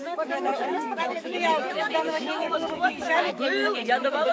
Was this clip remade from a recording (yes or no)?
yes